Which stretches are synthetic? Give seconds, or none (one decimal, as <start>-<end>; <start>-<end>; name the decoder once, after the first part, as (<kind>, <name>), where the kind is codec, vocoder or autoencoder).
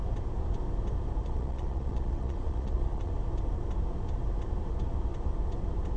1.2-3.1 (vocoder, Vocos)